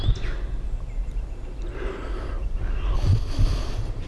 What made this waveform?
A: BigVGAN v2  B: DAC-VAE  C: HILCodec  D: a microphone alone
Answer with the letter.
D